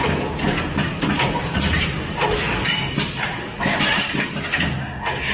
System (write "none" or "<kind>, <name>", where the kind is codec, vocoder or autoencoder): none